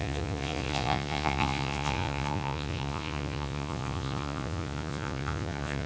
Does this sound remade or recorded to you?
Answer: remade